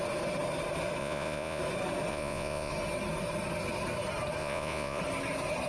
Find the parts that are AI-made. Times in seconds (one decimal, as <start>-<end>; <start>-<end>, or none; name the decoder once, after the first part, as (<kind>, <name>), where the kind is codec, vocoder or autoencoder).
1.0-1.6 (vocoder, Vocos); 2.1-2.7; 4.4-5.0